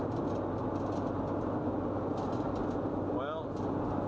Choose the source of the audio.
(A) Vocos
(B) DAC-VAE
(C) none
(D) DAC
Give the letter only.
C